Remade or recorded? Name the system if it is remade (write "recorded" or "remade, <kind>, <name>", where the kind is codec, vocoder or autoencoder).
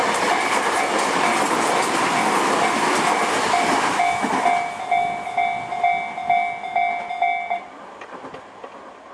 recorded